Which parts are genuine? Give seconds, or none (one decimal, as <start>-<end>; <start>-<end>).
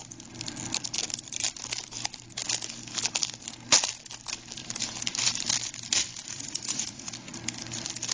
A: 0.0-6.2; 7.1-8.1